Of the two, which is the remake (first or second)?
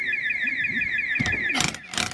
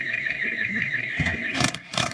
second